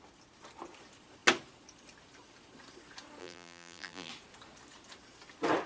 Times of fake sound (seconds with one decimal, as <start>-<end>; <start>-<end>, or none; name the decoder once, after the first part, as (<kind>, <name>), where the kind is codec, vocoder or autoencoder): 3.2-4.1 (vocoder, BigVGAN v2)